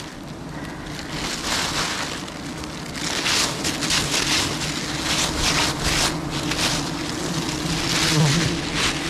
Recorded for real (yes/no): yes